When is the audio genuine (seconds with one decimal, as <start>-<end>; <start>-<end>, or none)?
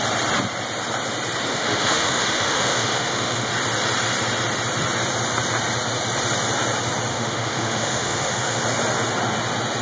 0.0-1.5; 3.5-7.1; 8.6-9.8